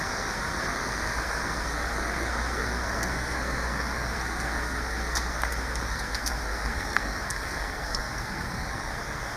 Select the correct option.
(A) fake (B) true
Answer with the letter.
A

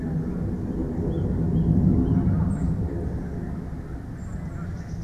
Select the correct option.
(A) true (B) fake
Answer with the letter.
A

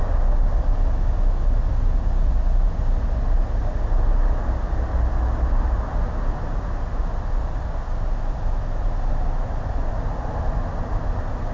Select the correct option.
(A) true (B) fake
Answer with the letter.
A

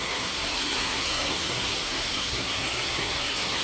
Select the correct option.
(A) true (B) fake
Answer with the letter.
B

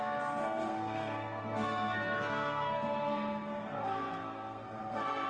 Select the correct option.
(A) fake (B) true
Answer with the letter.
A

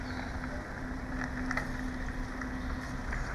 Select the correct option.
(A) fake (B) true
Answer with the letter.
B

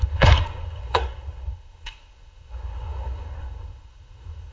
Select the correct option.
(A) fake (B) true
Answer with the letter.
A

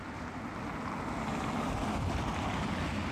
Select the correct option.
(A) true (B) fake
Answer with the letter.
A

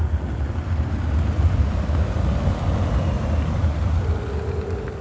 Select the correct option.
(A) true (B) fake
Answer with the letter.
A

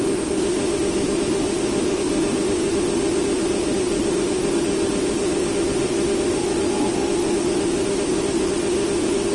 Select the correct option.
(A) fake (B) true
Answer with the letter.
B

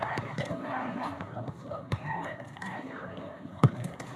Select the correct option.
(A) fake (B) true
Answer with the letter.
A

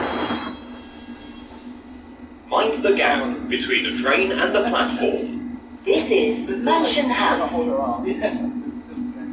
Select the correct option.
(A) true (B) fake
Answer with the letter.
A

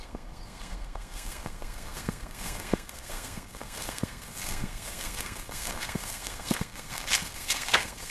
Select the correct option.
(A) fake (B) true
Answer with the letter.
A